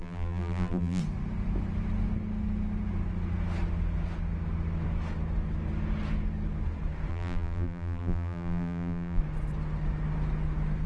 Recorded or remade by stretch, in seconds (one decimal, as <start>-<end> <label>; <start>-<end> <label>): 0.0-1.0 remade; 1.0-7.1 recorded; 7.1-9.2 remade; 9.2-10.9 recorded